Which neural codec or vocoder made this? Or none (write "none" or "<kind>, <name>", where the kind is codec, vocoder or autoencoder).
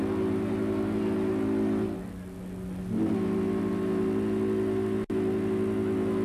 none